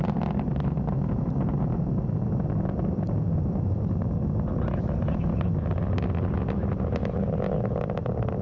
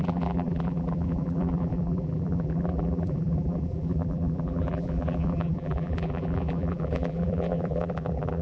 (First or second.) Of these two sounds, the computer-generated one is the second